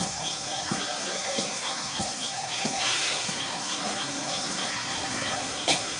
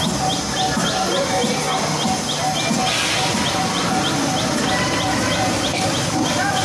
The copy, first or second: first